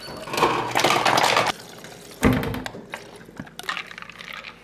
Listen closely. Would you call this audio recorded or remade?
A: recorded